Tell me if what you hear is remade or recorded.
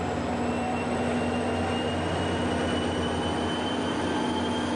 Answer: recorded